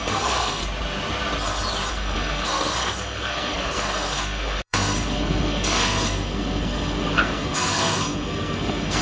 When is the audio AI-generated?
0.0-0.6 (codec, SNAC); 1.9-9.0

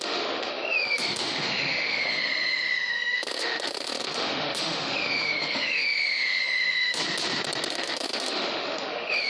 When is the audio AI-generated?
0.0-7.0 (autoencoder, DAC-VAE); 7.7-9.3